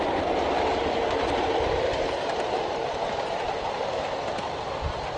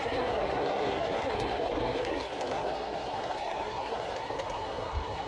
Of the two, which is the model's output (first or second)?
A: second